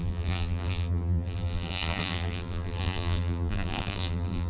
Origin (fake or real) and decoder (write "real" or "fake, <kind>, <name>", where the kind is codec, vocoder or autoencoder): fake, vocoder, BigVGAN v2